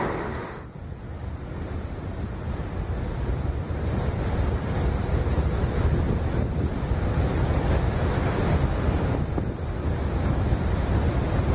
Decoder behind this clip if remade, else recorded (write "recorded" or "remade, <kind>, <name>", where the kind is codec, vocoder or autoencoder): recorded